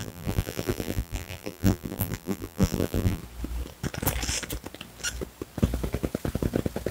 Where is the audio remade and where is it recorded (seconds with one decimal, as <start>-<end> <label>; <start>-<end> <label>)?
0.0-3.2 remade; 3.2-6.9 recorded